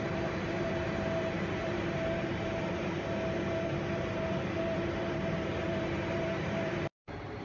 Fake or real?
fake